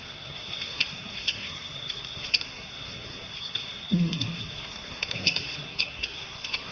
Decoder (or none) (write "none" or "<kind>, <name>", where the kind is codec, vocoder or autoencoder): codec, SNAC